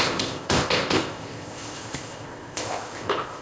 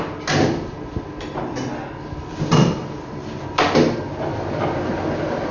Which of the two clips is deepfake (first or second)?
first